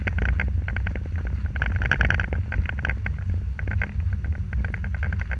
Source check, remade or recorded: recorded